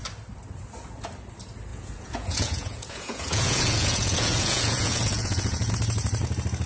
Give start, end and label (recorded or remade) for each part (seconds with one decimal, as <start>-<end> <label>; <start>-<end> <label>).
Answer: 0.0-1.7 recorded; 1.7-5.7 remade; 5.7-6.7 recorded